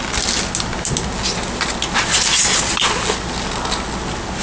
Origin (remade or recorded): recorded